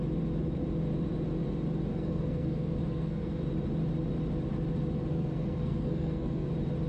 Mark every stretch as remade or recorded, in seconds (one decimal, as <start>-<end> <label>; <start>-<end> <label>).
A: 0.0-1.9 recorded; 1.9-3.4 remade; 3.4-5.1 recorded; 5.1-6.5 remade; 6.5-6.9 recorded